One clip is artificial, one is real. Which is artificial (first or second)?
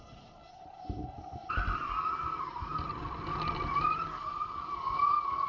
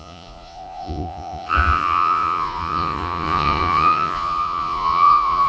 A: second